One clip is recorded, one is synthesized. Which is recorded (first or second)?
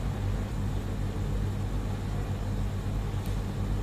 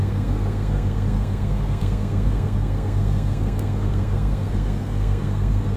first